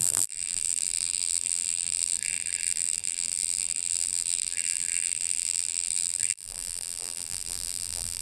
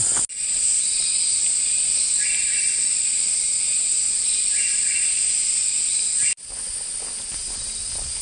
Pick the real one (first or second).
second